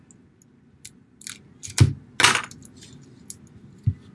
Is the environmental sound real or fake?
real